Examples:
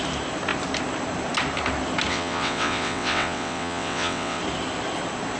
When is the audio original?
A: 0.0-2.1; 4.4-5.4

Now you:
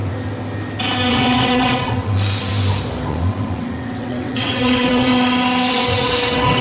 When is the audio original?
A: 0.0-1.1; 2.5-3.1; 5.1-5.7

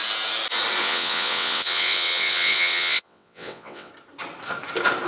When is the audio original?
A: 0.0-0.8; 3.9-5.1

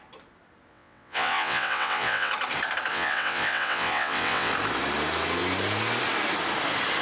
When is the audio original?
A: 0.0-0.7; 2.3-2.9; 4.5-7.0